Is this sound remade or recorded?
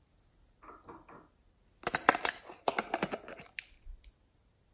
recorded